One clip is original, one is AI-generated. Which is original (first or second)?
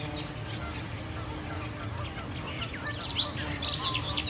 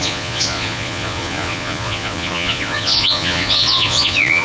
first